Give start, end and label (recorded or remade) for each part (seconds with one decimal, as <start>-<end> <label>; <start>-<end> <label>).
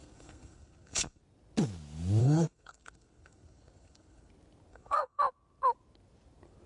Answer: 0.0-1.2 remade; 1.2-2.2 recorded; 2.2-4.3 remade; 4.3-4.7 recorded; 4.7-5.2 remade; 5.2-6.7 recorded